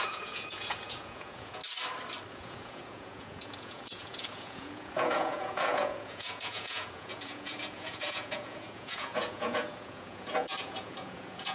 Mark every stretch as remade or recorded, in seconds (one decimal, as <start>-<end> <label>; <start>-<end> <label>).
0.0-1.6 remade; 1.6-2.3 recorded; 2.3-11.5 remade